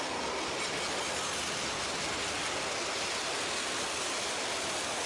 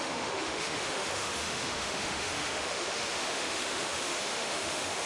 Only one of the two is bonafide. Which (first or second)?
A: first